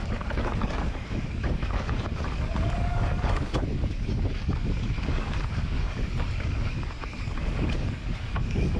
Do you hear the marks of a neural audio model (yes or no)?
yes